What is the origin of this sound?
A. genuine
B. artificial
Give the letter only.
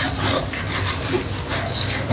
A